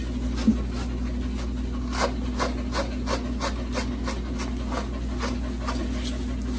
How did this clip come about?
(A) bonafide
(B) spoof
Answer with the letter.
A